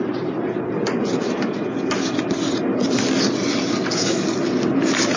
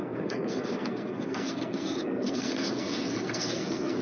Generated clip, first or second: second